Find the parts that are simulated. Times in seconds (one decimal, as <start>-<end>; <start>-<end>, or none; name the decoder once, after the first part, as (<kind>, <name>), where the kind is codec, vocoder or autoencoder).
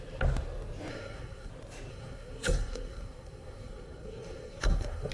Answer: 0.9-1.5 (codec, SNAC); 1.9-5.1